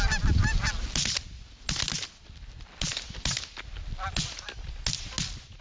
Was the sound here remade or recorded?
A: recorded